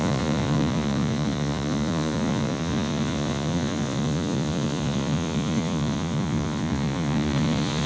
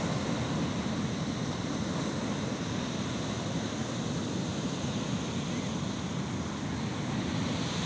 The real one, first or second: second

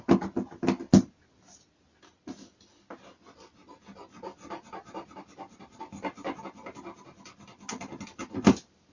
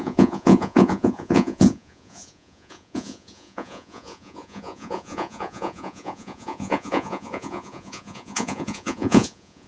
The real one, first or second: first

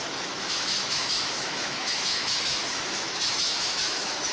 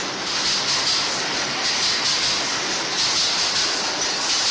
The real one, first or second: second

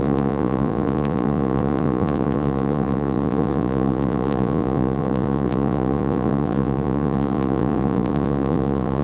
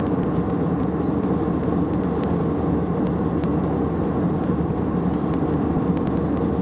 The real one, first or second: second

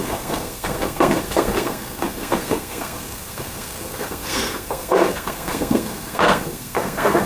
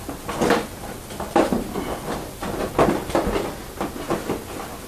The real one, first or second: second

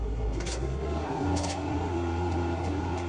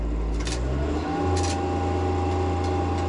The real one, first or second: second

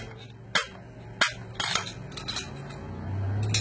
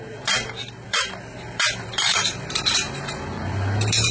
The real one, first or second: first